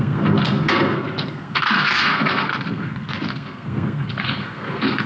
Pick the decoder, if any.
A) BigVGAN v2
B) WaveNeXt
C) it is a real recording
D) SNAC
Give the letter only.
D